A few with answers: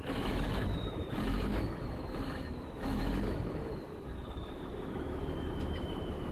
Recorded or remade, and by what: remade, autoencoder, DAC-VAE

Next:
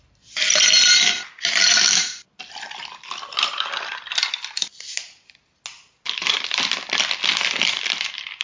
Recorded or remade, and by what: recorded